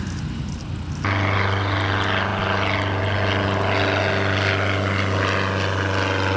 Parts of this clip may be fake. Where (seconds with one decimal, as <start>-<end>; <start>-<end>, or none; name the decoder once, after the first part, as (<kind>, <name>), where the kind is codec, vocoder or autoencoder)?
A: none